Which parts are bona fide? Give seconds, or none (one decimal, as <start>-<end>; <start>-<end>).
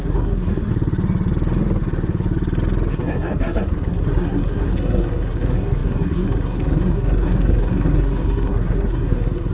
0.7-2.9